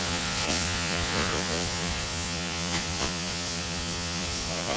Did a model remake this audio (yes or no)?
yes